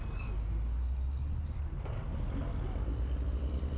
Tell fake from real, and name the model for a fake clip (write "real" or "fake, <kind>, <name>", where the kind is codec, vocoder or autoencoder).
real